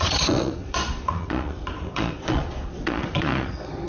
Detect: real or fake fake